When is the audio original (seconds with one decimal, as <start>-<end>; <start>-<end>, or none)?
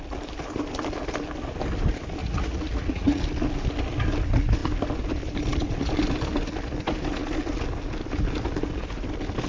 0.0-2.2; 3.2-9.5